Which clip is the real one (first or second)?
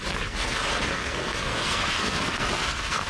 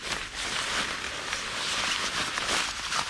second